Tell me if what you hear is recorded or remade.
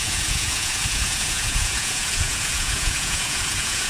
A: remade